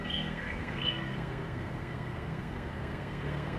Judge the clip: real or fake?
fake